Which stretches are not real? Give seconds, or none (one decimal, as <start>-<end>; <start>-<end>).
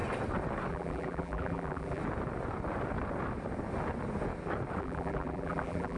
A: 0.7-2.0; 4.8-6.0